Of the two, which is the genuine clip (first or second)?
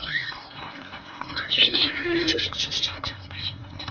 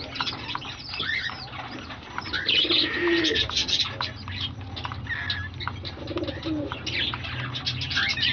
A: second